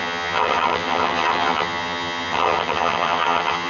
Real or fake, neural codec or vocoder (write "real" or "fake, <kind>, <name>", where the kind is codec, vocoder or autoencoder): fake, vocoder, HiFi-GAN